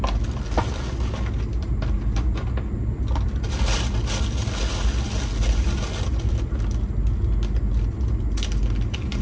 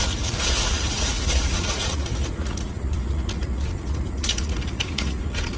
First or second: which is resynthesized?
second